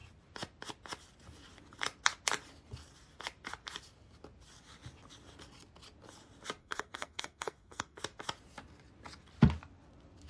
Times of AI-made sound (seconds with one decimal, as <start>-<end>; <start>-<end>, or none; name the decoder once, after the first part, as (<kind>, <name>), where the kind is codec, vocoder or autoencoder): 6.6-8.0 (codec, SNAC)